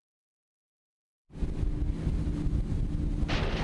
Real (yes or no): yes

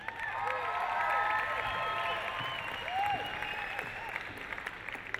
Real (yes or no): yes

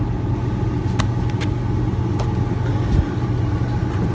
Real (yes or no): yes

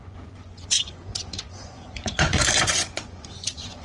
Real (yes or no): no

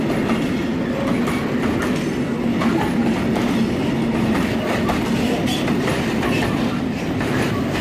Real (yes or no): yes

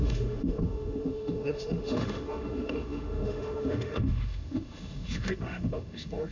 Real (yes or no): no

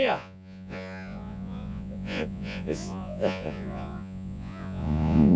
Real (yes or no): no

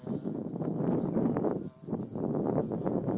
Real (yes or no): no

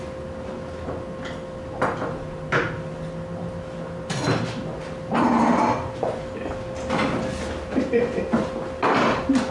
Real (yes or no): yes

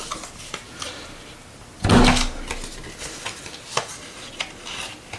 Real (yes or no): yes